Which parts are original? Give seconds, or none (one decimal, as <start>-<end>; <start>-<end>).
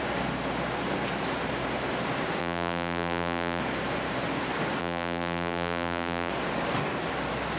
0.0-2.4; 3.6-4.8; 6.3-7.6